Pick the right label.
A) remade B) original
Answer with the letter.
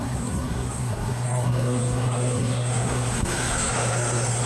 A